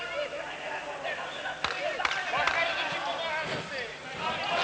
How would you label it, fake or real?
real